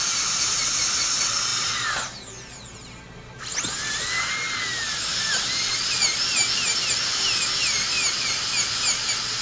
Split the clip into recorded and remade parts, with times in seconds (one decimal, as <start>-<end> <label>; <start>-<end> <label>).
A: 0.0-9.4 recorded